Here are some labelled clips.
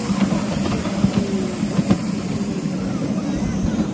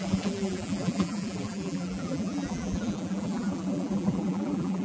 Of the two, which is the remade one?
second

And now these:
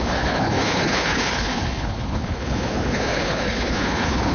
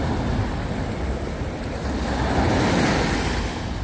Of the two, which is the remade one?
first